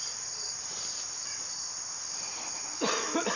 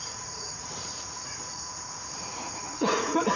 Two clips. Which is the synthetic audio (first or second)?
second